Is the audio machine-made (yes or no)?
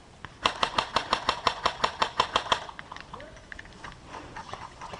yes